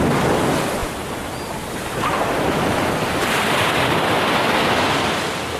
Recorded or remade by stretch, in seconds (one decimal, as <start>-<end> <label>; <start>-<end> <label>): 0.0-5.6 recorded